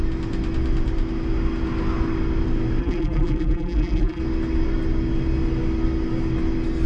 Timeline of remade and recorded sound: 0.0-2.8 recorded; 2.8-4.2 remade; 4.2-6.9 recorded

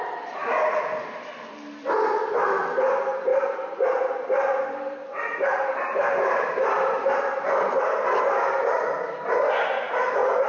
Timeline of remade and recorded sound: 0.0-0.4 recorded; 0.4-2.2 remade; 2.2-3.3 recorded; 3.3-8.2 remade; 8.2-10.5 recorded

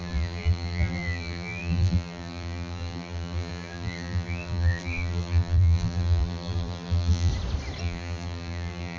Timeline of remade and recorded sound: 0.0-7.3 remade; 7.3-7.8 recorded; 7.8-9.0 remade

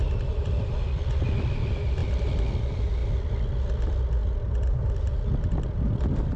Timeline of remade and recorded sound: 0.0-2.0 remade; 2.0-2.6 recorded; 2.6-3.0 remade; 3.0-3.7 recorded; 3.7-4.2 remade; 4.2-4.7 recorded; 4.7-6.4 remade

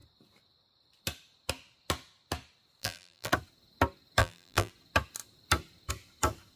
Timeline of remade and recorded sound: 0.0-2.8 recorded; 2.8-3.3 remade; 3.3-4.2 recorded; 4.2-4.7 remade; 4.7-6.6 recorded